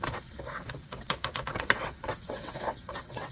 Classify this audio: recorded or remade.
remade